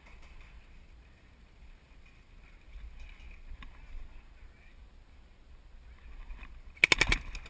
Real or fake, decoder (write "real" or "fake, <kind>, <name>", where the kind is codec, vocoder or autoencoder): real